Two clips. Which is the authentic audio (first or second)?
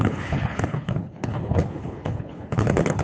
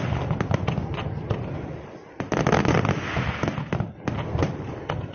second